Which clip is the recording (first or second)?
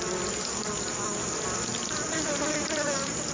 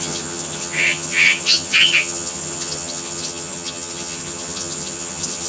first